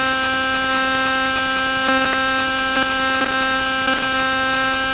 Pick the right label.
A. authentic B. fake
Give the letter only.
A